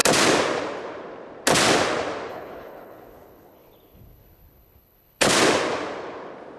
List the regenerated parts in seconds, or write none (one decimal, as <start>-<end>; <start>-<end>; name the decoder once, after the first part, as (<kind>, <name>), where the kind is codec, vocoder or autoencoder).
2.3-5.3 (codec, HILCodec)